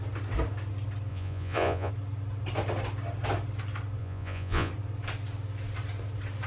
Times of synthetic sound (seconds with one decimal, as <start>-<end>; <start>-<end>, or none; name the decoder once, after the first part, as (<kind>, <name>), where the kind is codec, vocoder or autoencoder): 1.1-1.9 (vocoder, Vocos); 4.0-4.7